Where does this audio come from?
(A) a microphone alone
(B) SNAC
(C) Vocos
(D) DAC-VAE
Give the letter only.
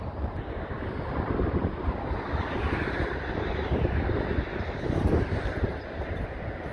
A